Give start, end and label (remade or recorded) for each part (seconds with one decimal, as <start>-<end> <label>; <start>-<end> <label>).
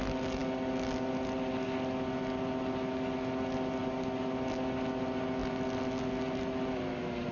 0.0-7.3 recorded